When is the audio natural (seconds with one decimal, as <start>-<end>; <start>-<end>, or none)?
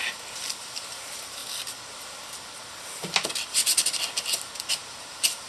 1.4-4.7